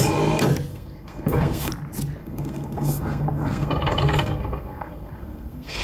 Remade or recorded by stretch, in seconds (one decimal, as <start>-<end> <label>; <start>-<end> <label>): 0.0-0.7 recorded; 0.7-1.7 remade; 1.7-2.2 recorded; 2.2-5.8 remade